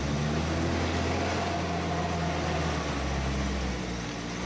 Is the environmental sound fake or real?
real